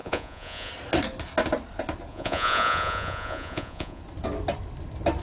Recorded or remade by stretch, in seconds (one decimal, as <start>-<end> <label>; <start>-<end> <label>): 0.0-0.7 remade; 0.7-2.1 recorded; 2.1-4.0 remade; 4.0-5.2 recorded